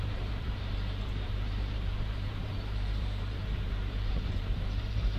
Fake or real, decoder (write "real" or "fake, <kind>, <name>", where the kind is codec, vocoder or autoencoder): fake, vocoder, BigVGAN v2